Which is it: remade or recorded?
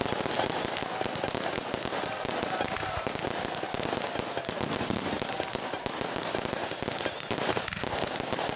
recorded